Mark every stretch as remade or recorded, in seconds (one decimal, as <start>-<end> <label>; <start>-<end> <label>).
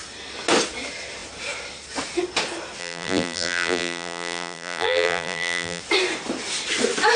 0.0-2.8 recorded; 2.8-5.8 remade; 5.8-7.2 recorded